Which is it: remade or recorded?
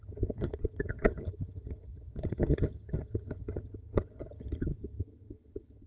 remade